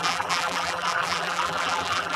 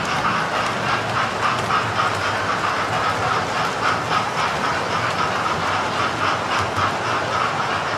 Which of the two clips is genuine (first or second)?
second